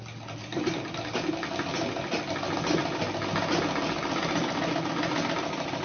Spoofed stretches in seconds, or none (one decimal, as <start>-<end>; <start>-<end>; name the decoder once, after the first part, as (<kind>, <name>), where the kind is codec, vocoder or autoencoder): none